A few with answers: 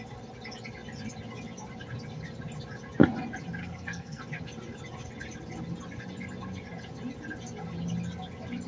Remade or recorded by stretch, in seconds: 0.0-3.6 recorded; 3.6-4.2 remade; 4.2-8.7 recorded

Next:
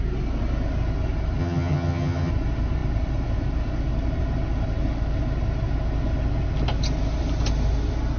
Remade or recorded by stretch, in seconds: 0.0-1.4 recorded; 1.4-2.3 remade; 2.3-8.2 recorded

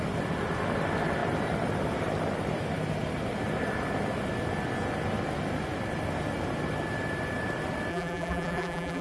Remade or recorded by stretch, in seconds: 0.0-7.9 recorded; 7.9-9.0 remade

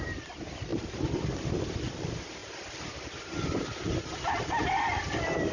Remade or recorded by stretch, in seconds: 0.0-5.5 recorded

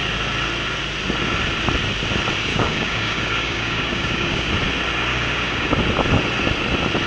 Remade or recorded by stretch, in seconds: 0.0-2.5 recorded; 2.5-4.5 remade; 4.5-5.1 recorded; 5.1-5.7 remade; 5.7-7.1 recorded

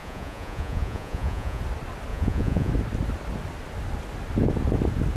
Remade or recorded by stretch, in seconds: 0.0-1.6 remade; 1.6-2.1 recorded; 2.1-2.7 remade; 2.7-5.2 recorded

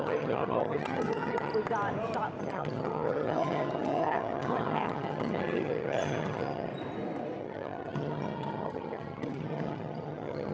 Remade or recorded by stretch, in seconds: 0.0-1.5 remade; 1.5-2.4 recorded; 2.4-6.7 remade; 6.7-7.4 recorded; 7.4-10.5 remade